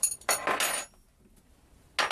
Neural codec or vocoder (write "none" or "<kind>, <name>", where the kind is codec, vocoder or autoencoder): none